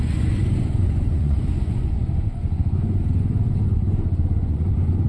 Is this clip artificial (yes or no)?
yes